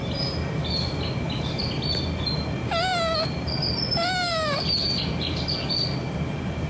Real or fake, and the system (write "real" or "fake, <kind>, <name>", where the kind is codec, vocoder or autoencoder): real